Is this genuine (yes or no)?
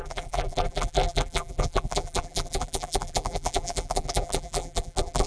no